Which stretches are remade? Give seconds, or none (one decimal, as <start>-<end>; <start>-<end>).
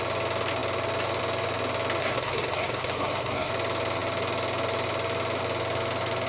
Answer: 2.0-3.5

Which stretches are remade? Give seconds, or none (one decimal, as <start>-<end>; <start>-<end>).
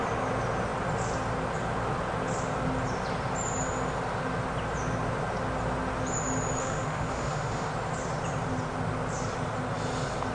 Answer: 6.6-7.7